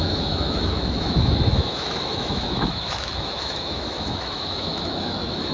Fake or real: fake